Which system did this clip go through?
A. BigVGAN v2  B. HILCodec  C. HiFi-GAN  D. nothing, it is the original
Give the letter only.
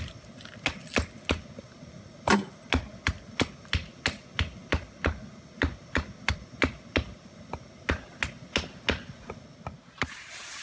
D